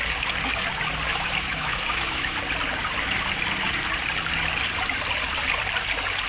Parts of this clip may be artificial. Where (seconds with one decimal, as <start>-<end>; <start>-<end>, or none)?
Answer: 1.1-2.4